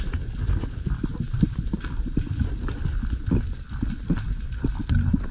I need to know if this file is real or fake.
real